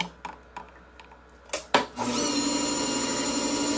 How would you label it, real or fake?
real